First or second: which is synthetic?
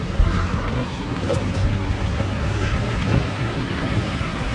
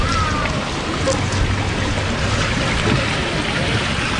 first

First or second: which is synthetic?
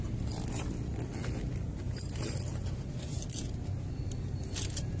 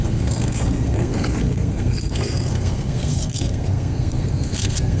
second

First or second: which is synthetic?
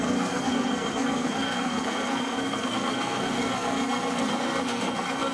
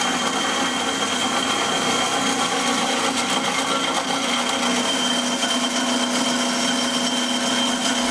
first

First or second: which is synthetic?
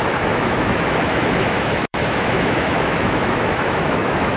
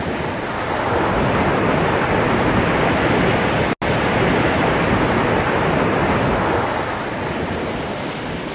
first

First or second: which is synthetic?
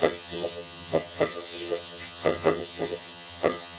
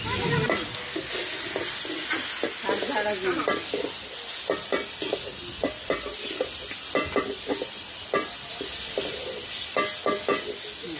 first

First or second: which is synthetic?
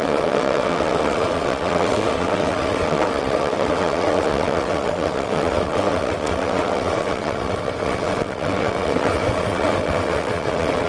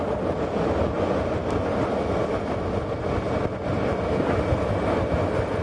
first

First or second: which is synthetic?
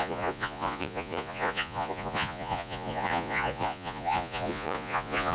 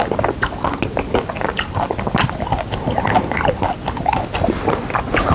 first